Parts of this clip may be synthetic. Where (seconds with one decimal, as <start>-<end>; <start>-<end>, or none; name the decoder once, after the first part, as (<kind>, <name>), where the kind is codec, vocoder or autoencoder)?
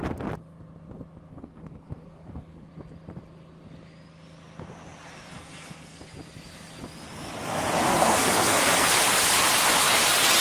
1.3-2.7 (codec, SNAC); 5.3-6.0; 8.0-8.9